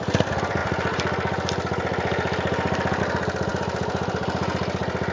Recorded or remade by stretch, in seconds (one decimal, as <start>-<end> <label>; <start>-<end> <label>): 0.0-5.1 recorded